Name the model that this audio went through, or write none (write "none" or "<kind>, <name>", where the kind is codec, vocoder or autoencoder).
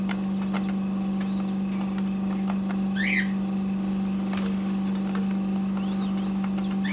none